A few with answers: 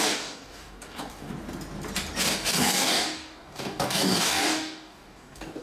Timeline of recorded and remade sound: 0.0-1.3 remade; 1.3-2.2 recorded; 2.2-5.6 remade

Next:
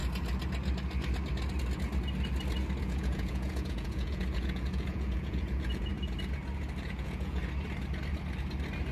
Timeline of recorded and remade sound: 0.0-2.8 recorded; 2.8-5.9 remade; 5.9-6.8 recorded; 6.8-7.4 remade; 7.4-8.9 recorded

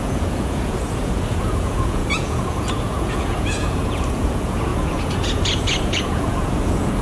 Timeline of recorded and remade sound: 0.0-7.0 remade

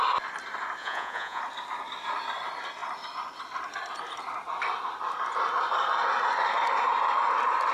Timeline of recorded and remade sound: 0.0-0.8 recorded; 0.8-1.4 remade; 1.4-7.7 recorded